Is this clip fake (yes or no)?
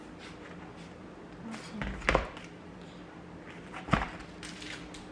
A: no